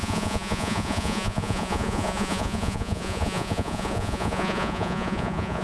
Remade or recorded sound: remade